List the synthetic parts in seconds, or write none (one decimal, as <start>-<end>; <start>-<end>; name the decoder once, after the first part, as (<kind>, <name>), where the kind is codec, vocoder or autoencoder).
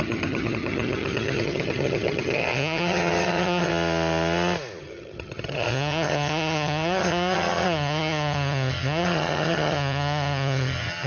0.0-3.7 (vocoder, HiFi-GAN); 4.8-11.1